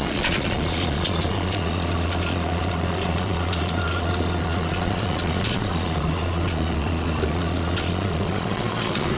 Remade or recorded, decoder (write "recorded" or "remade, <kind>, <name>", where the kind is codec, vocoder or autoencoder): remade, vocoder, Vocos